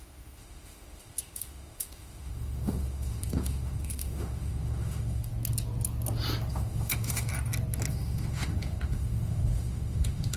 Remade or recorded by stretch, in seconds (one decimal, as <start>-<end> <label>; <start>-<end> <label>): 0.0-5.3 remade; 5.3-6.5 recorded; 6.5-7.3 remade; 7.3-7.9 recorded; 7.9-10.4 remade